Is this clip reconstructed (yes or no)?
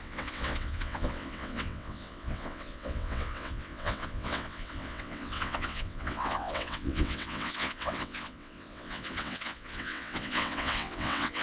yes